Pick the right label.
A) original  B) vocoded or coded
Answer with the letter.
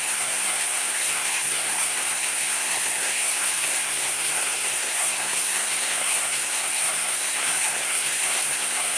B